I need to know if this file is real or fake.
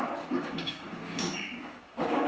fake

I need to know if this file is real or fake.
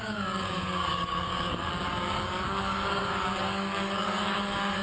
fake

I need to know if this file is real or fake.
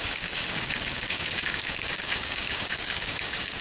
fake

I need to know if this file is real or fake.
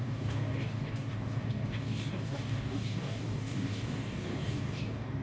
fake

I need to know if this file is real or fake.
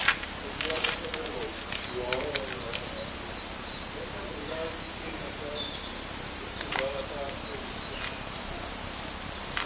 real